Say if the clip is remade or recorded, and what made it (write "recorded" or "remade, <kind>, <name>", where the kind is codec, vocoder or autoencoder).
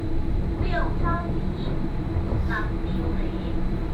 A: remade, vocoder, BigVGAN v2